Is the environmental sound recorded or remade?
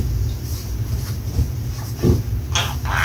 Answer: recorded